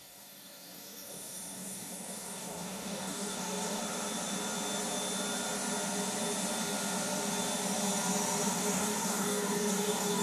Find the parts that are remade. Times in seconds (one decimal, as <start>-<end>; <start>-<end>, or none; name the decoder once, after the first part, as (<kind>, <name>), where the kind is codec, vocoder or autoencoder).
0.0-3.8 (codec, DAC); 8.5-10.2